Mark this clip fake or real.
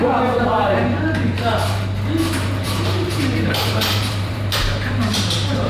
fake